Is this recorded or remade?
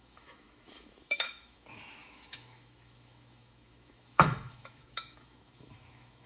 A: remade